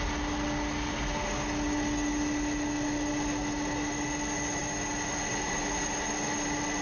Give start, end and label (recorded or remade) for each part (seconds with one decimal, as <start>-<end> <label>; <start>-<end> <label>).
0.0-6.8 recorded